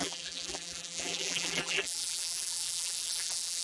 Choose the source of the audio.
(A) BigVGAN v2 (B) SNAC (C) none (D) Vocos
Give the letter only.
A